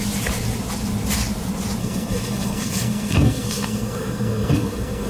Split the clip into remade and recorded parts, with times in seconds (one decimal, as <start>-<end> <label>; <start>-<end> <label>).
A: 0.0-1.8 recorded; 1.8-5.1 remade